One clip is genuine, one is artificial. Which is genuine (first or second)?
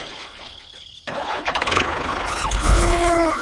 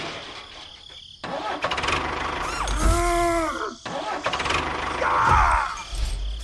second